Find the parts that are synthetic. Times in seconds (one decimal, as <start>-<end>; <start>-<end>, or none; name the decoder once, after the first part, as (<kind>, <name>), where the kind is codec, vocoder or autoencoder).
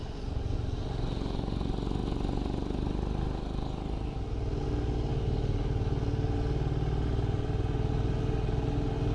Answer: none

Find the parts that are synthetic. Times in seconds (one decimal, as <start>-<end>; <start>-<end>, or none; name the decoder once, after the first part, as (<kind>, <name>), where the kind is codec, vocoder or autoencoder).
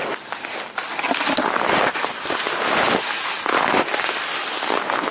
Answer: none